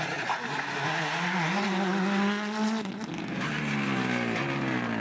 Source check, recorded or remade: recorded